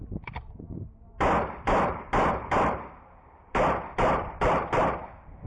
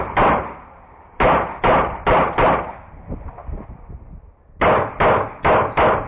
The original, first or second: second